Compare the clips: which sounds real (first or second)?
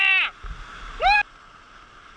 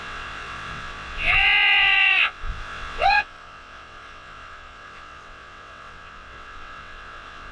first